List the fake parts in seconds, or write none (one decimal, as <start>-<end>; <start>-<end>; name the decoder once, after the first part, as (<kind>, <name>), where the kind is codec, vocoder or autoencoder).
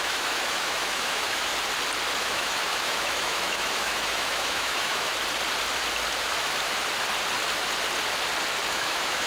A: 0.0-1.5 (autoencoder, DAC-VAE); 2.2-5.1; 6.2-6.7; 8.7-9.3